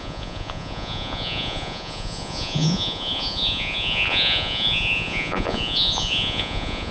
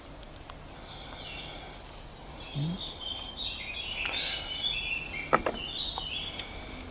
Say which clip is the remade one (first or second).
first